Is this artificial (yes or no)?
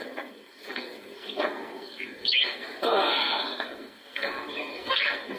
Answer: yes